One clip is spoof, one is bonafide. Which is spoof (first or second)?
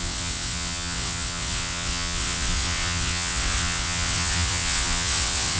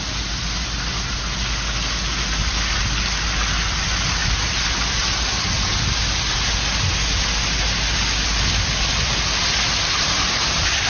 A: first